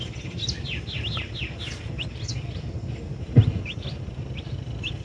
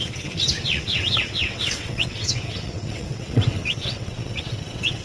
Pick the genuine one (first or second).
first